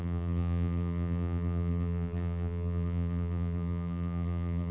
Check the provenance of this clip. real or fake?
fake